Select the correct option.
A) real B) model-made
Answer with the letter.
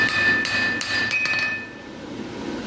A